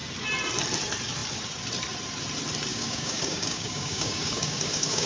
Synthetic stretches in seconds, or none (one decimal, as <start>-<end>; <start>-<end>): 2.7-5.1